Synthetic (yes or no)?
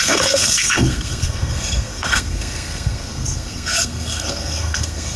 yes